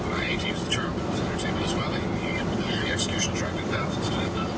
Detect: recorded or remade recorded